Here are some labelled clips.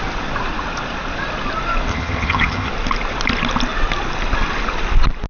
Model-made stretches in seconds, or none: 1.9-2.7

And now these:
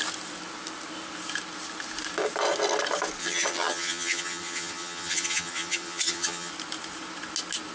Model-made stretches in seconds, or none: 3.2-6.5

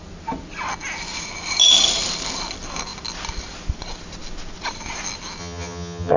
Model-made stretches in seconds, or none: 5.4-6.2

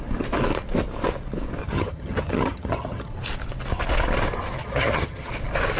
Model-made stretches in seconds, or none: 1.6-3.1; 4.6-5.3